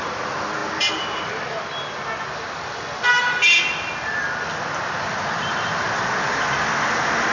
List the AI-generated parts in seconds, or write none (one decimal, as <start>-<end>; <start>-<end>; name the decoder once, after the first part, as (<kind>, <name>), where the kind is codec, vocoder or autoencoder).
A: none